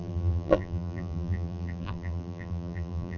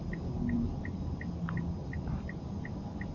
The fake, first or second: first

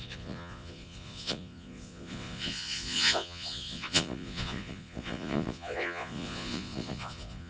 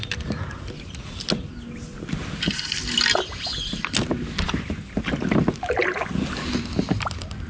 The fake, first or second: first